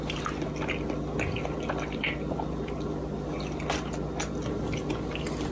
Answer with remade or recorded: recorded